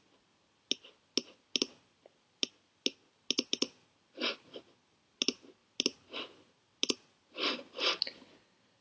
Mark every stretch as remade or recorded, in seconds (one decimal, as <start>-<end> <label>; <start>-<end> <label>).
0.0-8.8 recorded